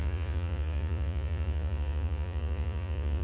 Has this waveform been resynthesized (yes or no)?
yes